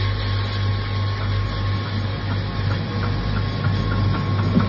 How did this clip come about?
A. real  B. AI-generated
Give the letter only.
A